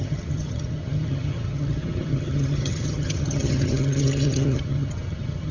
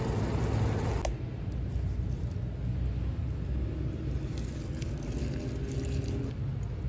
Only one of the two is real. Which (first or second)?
second